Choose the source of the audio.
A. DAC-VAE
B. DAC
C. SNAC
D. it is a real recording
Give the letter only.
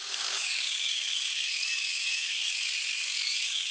B